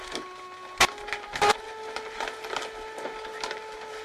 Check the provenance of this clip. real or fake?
real